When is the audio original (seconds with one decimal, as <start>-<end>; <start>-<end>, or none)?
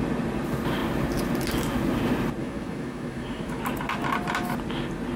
0.0-2.4; 3.6-5.2